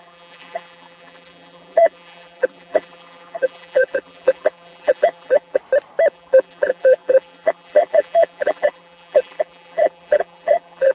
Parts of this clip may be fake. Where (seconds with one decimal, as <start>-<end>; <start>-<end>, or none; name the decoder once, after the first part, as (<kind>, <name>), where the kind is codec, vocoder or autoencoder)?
0.0-5.6 (vocoder, BigVGAN v2); 6.1-10.9